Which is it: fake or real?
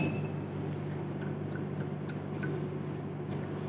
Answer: real